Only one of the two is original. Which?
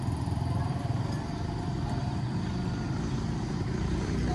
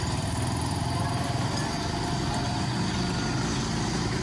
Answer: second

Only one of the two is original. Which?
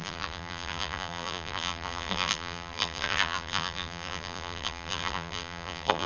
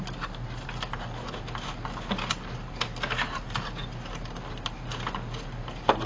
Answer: second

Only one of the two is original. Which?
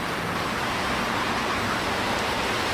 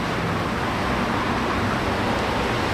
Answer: second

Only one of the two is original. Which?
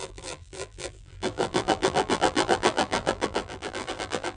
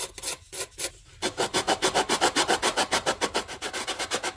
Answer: second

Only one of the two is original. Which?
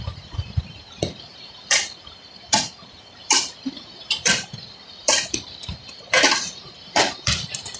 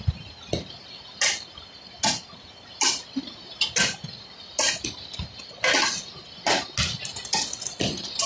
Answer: second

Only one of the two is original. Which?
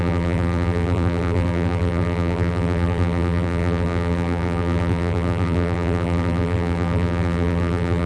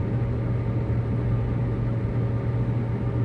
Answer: second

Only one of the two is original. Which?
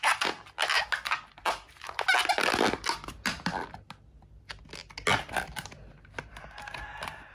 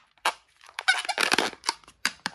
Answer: first